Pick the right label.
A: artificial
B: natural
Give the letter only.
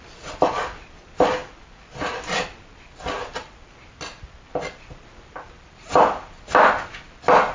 B